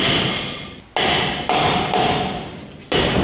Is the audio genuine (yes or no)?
yes